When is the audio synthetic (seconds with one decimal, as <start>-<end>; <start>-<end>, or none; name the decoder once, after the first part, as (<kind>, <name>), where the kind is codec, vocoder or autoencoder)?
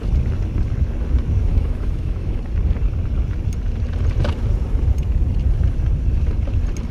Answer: 1.5-2.4 (autoencoder, DAC-VAE)